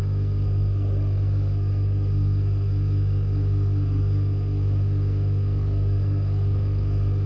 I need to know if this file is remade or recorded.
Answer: remade